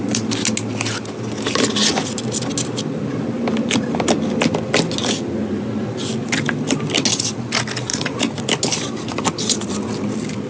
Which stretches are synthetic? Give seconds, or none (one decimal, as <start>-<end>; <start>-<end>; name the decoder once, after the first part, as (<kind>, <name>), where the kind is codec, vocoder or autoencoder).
7.9-8.4 (vocoder, Vocos)